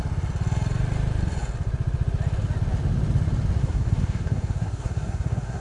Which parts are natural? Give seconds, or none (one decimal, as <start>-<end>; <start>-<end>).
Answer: 0.0-3.6